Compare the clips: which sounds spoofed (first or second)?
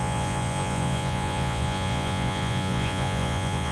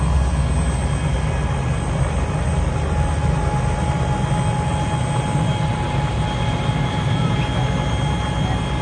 first